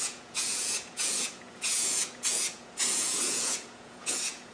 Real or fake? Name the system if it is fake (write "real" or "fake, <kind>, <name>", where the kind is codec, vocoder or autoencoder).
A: fake, vocoder, Vocos